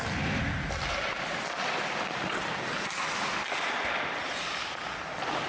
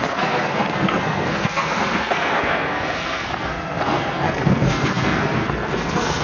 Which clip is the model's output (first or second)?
second